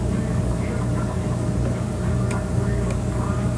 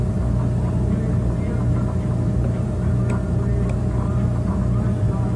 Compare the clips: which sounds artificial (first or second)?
first